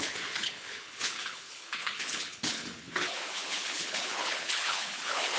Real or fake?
fake